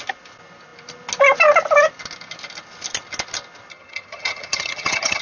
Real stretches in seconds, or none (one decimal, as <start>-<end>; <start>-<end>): 0.0-3.7